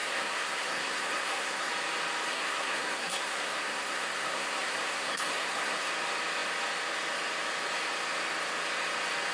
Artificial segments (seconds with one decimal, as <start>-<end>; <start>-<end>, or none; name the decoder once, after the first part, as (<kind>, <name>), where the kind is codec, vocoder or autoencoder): 0.0-1.7 (codec, SNAC); 2.3-5.9

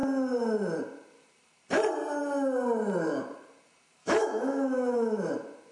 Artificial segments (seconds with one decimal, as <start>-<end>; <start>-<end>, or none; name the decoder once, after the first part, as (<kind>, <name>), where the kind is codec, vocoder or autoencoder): 4.0-5.3 (autoencoder, DAC-VAE)

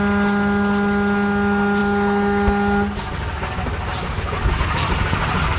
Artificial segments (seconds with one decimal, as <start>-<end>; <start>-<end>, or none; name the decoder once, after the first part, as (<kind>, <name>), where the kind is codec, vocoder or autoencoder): none